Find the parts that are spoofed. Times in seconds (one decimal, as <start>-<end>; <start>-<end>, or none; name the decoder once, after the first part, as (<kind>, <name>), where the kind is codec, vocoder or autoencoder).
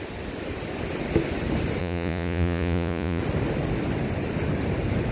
1.8-3.2 (vocoder, Vocos)